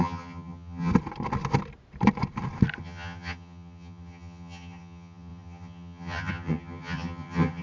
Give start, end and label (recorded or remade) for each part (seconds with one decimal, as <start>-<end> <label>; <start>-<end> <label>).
0.0-0.9 remade; 0.9-2.8 recorded; 2.8-7.6 remade